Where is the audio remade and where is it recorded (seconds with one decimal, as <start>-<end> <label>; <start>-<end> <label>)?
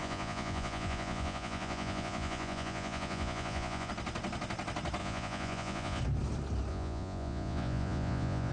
0.0-3.9 remade; 3.9-5.0 recorded; 5.0-6.0 remade; 6.0-6.7 recorded; 6.7-8.5 remade